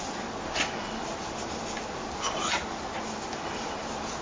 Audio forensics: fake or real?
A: real